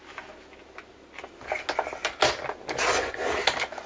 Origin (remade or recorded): recorded